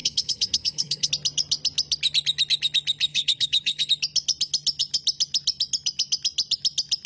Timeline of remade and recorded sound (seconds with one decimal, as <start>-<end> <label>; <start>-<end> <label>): 0.0-1.1 remade; 1.1-3.1 recorded; 3.1-3.9 remade; 3.9-7.1 recorded